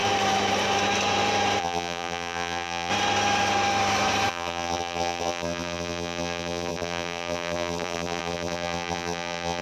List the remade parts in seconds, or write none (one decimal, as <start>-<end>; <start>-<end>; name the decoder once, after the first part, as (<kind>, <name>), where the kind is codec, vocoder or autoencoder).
1.6-2.9 (vocoder, BigVGAN v2); 4.3-9.6